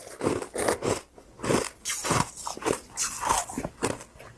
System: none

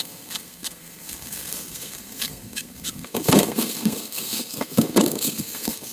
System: codec, SNAC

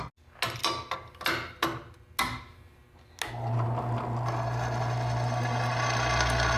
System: none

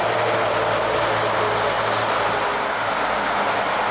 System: none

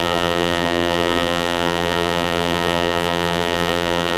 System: vocoder, BigVGAN v2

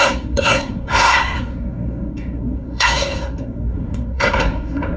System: codec, SNAC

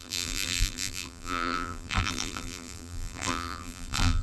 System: vocoder, BigVGAN v2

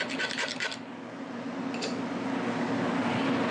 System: none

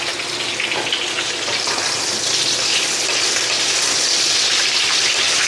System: none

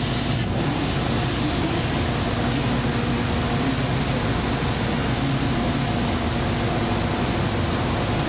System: none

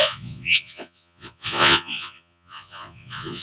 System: vocoder, Vocos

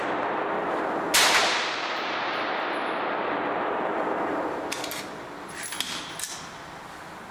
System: none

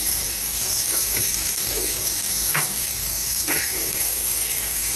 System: codec, DAC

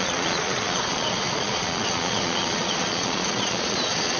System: vocoder, Vocos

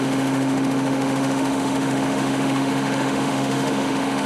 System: autoencoder, DAC-VAE